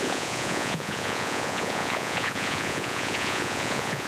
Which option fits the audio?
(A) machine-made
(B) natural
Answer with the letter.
A